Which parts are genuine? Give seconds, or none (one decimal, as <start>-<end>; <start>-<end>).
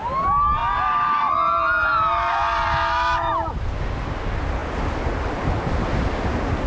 0.0-6.7